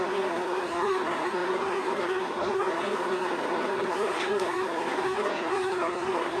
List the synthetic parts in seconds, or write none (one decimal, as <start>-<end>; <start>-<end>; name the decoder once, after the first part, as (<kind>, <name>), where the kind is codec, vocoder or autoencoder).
0.0-6.4 (codec, SNAC)